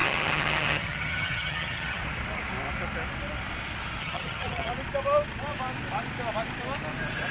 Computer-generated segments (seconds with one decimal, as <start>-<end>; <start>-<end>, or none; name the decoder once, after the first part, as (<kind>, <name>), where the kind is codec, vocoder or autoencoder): 0.0-2.0 (vocoder, HiFi-GAN); 4.0-4.7